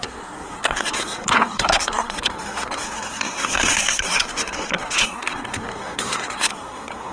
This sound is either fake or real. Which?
fake